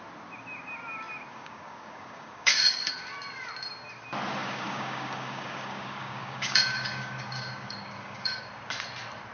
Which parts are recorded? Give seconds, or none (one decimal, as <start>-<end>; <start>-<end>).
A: 0.0-1.3; 2.9-4.4; 8.5-9.3